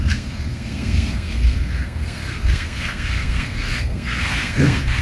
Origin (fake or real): fake